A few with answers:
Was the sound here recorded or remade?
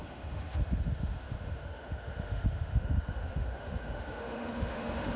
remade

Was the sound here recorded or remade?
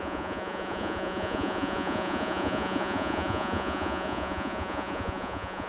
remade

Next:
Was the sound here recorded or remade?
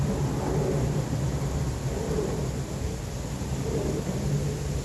recorded